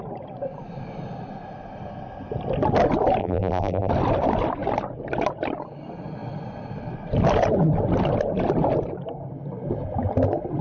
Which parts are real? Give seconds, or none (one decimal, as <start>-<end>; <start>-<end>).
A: 0.0-3.2; 3.9-10.6